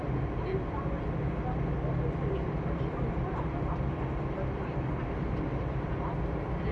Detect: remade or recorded remade